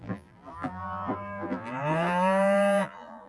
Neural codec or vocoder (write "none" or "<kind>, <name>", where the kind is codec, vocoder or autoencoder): vocoder, BigVGAN v2